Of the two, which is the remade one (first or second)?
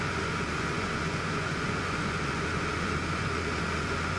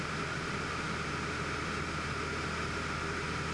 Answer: first